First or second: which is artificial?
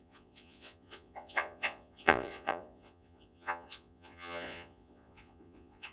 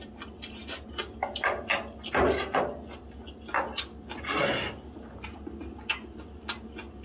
first